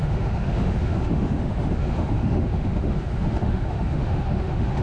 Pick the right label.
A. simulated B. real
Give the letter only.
A